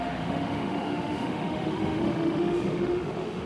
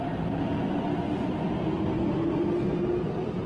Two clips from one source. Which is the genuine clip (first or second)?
second